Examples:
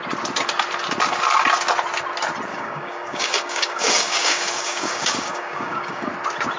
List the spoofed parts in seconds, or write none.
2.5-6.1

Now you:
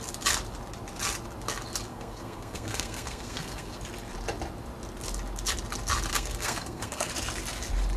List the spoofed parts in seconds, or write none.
1.9-3.8; 6.1-7.1